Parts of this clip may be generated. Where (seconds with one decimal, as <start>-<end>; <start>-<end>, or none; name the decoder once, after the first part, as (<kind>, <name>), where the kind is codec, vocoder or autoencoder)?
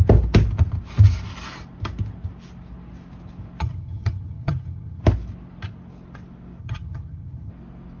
3.6-5.0 (vocoder, HiFi-GAN); 6.6-7.5